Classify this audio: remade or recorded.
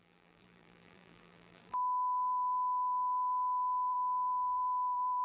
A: remade